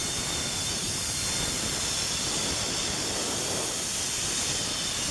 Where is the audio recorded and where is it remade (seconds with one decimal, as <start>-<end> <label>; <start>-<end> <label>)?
0.0-5.1 recorded